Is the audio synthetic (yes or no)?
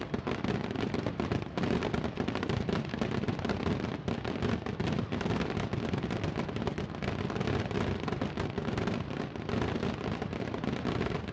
no